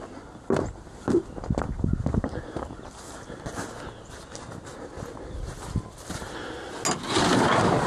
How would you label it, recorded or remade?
recorded